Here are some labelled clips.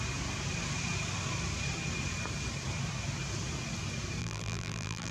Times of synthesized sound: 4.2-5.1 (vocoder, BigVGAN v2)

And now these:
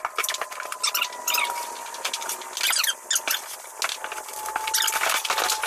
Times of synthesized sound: none

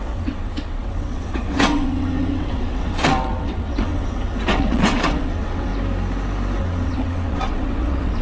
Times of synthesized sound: 0.0-5.7 (vocoder, WaveNeXt); 6.6-8.2

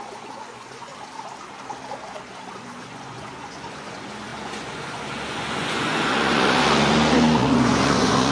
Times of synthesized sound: 0.0-0.9 (vocoder, Vocos); 2.5-8.3

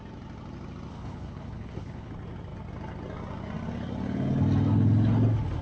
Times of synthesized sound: 0.9-2.1 (codec, HILCodec)

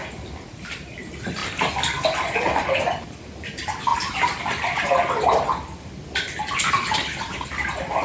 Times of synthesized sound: none

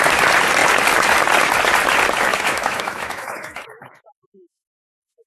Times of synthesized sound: 2.3-5.3 (autoencoder, DAC-VAE)